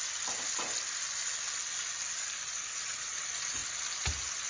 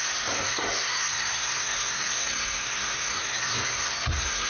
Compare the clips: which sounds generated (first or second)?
second